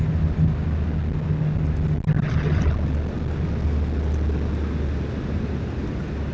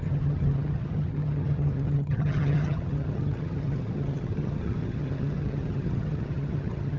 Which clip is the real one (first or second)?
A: first